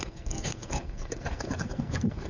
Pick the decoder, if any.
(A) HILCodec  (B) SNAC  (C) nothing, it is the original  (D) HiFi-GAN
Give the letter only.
B